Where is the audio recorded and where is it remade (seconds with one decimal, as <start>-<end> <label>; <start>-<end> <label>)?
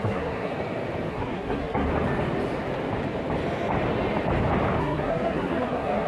0.0-0.5 remade; 0.5-1.1 recorded; 1.1-1.9 remade; 1.9-4.8 recorded; 4.8-6.1 remade